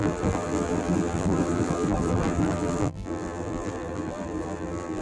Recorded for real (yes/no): no